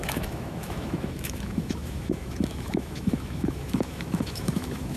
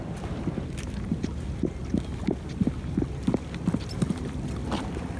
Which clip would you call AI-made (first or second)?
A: first